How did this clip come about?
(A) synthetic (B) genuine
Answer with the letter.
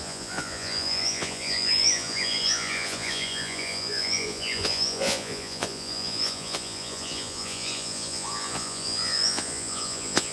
A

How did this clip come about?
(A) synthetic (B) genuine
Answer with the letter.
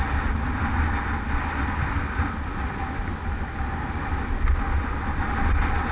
B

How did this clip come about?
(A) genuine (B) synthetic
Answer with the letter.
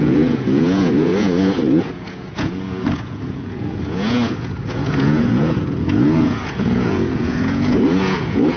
B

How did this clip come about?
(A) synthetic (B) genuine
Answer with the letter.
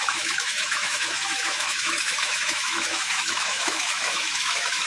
A